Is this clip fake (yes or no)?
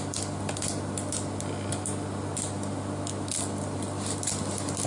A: no